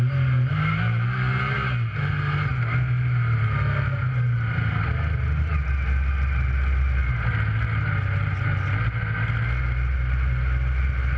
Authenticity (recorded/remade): recorded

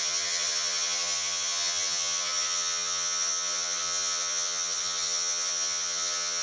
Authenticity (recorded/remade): remade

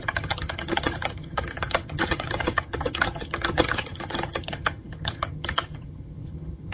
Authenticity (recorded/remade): remade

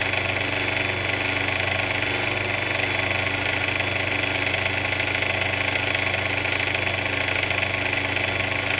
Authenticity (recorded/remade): recorded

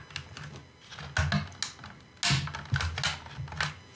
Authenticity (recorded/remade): recorded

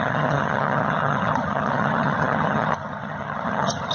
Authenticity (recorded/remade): remade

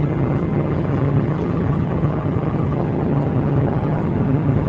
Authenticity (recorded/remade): remade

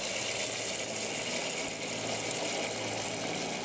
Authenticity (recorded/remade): recorded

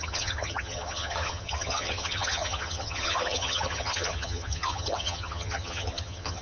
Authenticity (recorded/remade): remade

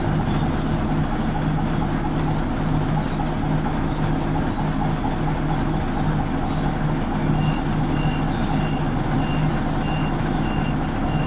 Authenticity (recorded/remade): recorded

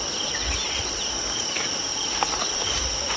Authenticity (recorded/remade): recorded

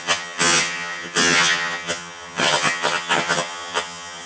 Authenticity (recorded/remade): remade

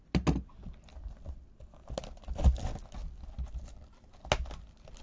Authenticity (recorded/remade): recorded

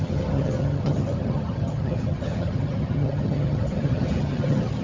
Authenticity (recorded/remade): remade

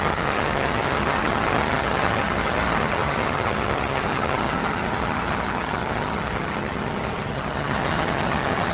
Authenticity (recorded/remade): remade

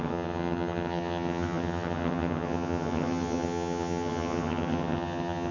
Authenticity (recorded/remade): remade